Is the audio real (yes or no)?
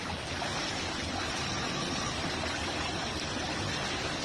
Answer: yes